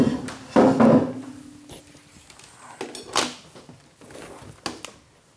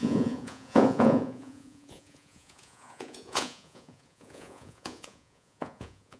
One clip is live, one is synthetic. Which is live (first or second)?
first